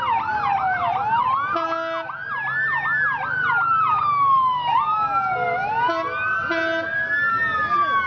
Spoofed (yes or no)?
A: no